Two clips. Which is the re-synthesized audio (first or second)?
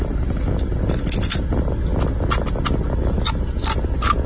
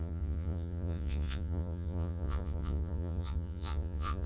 second